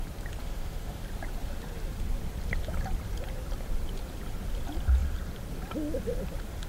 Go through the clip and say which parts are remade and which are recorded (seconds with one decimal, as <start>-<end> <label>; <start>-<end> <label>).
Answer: 0.0-0.4 recorded; 0.4-1.0 remade; 1.0-6.7 recorded